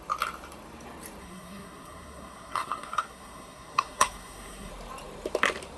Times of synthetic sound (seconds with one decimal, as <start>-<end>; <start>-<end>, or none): 1.2-4.7